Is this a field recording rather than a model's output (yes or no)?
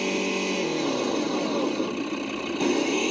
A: yes